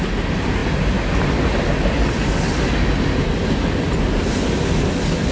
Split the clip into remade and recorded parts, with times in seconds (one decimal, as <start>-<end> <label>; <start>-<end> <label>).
0.0-5.3 recorded